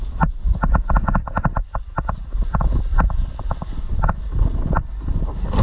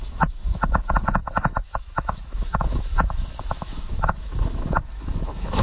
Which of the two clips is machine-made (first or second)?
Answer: second